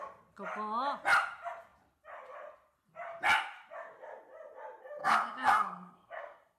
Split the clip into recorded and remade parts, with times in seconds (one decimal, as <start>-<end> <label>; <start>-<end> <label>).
0.0-5.0 recorded; 5.0-6.6 remade